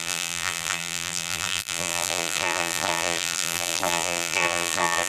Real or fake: fake